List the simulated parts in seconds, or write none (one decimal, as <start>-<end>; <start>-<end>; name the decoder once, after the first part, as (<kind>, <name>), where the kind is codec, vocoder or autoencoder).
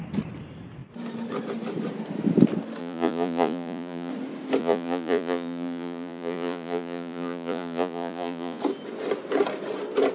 2.8-4.1 (vocoder, Vocos); 4.6-8.6